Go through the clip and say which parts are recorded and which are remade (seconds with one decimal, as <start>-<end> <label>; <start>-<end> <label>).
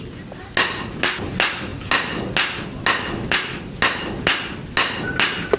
0.0-5.6 recorded